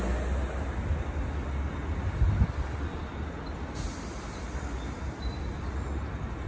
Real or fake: real